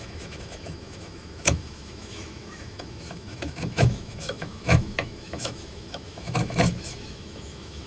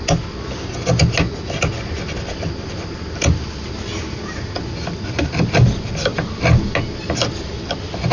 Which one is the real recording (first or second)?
second